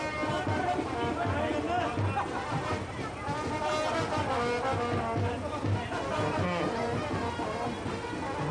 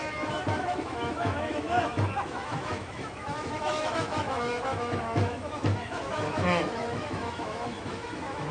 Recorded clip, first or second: first